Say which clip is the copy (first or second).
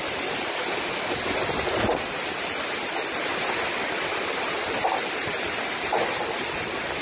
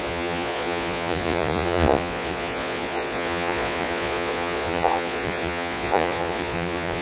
second